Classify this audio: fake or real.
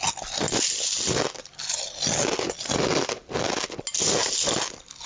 real